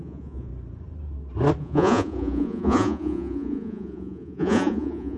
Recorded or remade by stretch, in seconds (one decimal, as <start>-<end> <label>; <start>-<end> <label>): 0.0-0.5 remade; 0.5-1.6 recorded; 1.6-5.2 remade